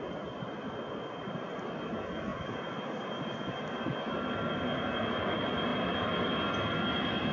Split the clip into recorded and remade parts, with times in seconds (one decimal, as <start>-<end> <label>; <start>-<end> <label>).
0.0-7.3 recorded